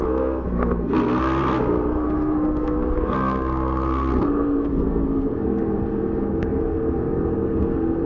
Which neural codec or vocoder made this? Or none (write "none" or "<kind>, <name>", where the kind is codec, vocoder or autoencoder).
codec, SNAC